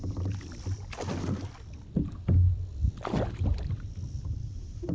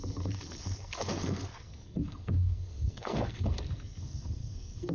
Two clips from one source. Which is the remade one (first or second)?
second